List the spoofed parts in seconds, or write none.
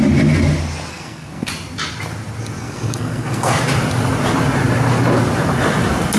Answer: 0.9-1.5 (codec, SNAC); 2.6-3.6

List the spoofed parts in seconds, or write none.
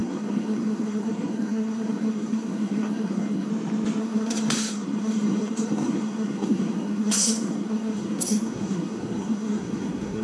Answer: 0.0-3.5 (codec, SNAC); 4.0-10.2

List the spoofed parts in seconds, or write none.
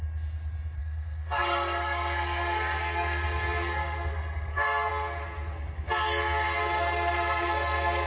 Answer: 0.8-4.9 (codec, SNAC); 6.6-8.1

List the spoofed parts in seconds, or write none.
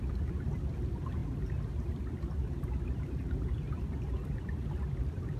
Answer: none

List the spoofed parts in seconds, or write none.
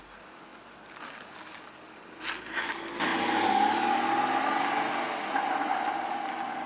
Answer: none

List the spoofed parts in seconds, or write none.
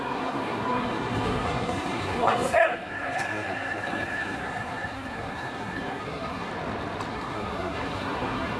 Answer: 0.0-6.5 (codec, SNAC); 7.1-8.6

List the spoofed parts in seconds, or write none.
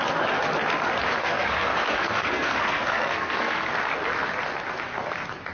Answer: 1.2-3.7 (codec, SNAC)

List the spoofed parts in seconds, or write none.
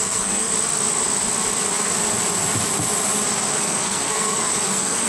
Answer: 0.0-0.5 (codec, SNAC); 3.6-5.1